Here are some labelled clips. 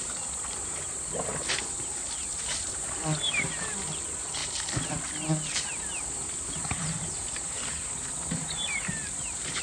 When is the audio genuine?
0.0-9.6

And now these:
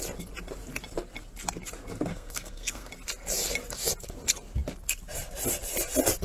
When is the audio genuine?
0.0-2.1; 2.9-6.2